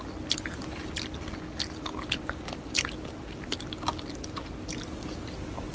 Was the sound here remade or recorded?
recorded